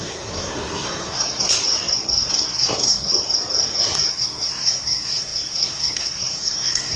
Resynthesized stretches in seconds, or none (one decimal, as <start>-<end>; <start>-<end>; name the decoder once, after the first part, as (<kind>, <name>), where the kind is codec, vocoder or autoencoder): 0.0-1.6 (codec, SNAC); 2.3-3.1; 4.1-7.0